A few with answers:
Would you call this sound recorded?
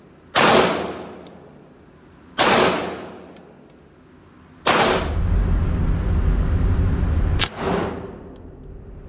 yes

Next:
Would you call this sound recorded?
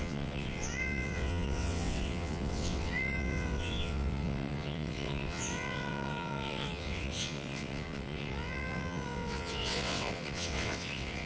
no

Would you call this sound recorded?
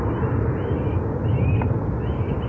yes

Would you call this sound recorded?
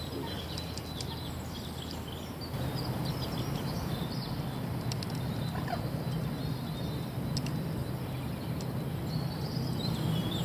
yes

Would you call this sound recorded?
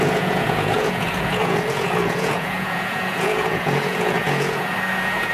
no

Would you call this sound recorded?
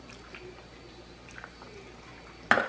yes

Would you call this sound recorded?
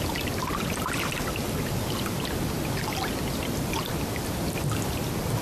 yes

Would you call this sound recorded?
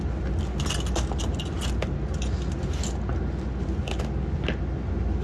yes